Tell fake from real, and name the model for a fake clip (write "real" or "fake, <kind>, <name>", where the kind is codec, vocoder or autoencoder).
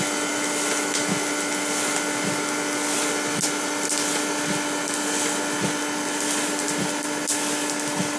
real